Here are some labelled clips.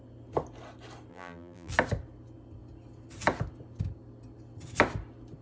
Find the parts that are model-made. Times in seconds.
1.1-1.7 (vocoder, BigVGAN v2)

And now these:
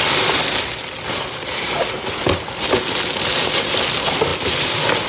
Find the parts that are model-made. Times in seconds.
none

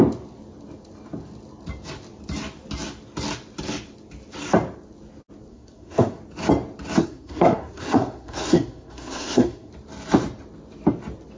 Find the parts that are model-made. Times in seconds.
5.5-6.2 (codec, SNAC); 7.0-9.7

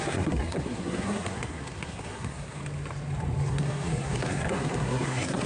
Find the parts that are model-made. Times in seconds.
0.0-2.6 (codec, SNAC); 3.5-5.5

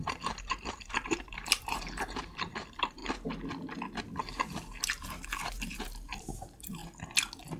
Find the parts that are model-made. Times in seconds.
0.0-3.0 (vocoder, BigVGAN v2); 5.4-6.8

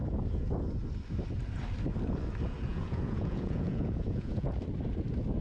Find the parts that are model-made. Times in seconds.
2.7-4.6 (vocoder, Vocos)

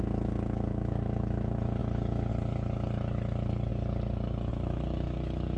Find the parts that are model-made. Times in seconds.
0.0-3.7 (autoencoder, DAC-VAE); 4.5-5.6

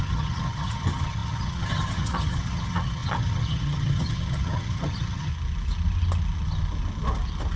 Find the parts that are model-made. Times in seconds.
0.0-5.3 (vocoder, HiFi-GAN)